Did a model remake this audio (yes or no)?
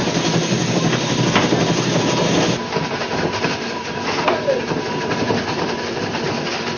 no